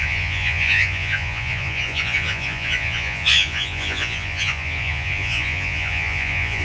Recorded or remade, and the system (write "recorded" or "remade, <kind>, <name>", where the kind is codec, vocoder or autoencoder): remade, vocoder, Vocos